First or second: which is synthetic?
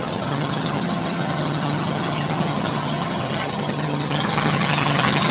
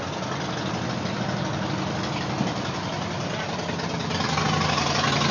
first